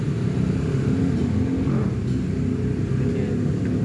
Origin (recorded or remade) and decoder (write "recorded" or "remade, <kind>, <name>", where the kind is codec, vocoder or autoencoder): recorded